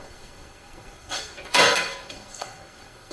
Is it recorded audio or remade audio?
remade